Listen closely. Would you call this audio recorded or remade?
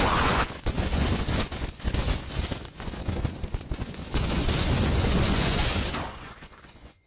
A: remade